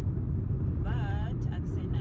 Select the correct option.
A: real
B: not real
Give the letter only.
A